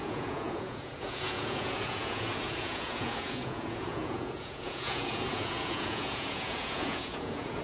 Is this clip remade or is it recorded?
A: remade